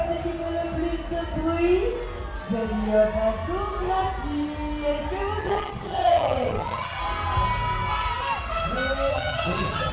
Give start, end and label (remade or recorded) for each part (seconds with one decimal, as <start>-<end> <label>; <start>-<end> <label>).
0.0-5.4 recorded; 5.4-7.0 remade; 7.0-9.1 recorded; 9.1-9.9 remade